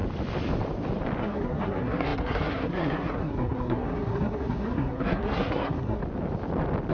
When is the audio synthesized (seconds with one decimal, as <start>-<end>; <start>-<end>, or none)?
1.2-6.0